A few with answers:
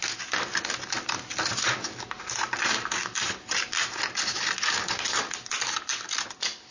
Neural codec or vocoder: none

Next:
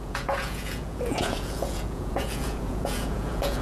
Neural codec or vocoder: vocoder, Vocos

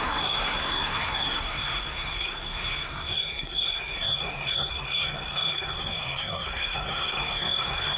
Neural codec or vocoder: codec, SNAC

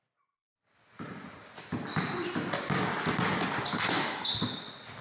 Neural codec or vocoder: none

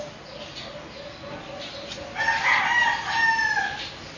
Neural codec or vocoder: none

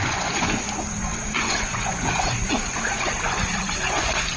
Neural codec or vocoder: vocoder, Vocos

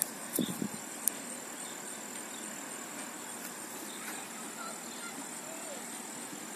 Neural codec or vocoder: none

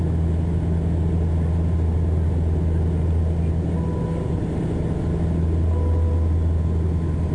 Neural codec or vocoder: none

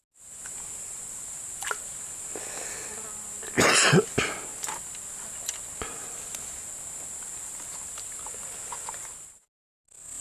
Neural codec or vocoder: none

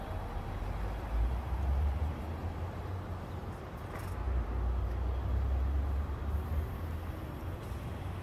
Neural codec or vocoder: none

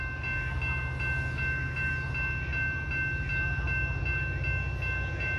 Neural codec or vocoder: none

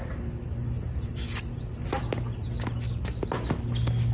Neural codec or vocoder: none